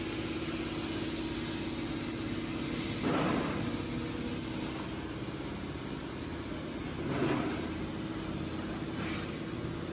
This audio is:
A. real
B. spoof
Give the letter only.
A